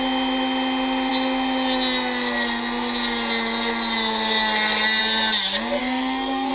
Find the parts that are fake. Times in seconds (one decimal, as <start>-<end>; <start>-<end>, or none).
5.8-6.5